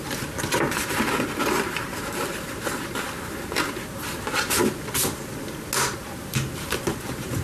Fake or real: real